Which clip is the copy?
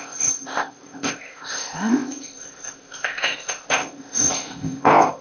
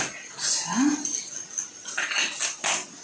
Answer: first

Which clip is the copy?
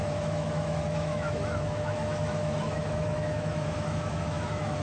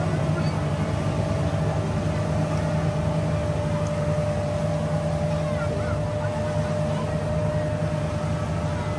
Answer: first